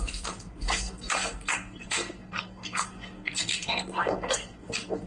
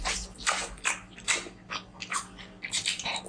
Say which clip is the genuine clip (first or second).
second